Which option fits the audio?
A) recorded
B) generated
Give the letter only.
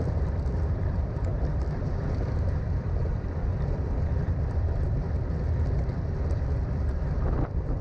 B